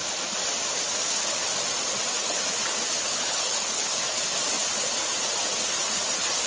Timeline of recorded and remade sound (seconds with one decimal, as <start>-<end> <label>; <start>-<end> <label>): 0.0-3.1 recorded; 3.1-4.0 remade; 4.0-6.5 recorded